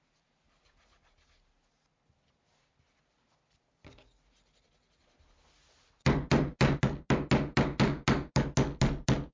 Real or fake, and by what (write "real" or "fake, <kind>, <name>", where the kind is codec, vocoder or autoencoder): real